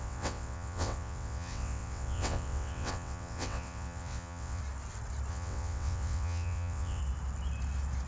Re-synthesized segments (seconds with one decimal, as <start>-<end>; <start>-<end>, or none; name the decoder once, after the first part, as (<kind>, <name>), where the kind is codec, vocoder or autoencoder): 0.0-4.6 (vocoder, WaveNeXt); 5.3-7.0